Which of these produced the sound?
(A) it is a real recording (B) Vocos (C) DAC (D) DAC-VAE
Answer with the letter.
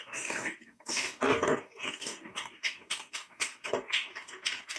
C